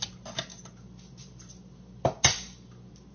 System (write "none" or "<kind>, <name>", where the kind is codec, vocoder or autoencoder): none